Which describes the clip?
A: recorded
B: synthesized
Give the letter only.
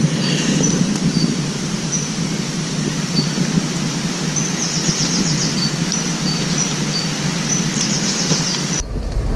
A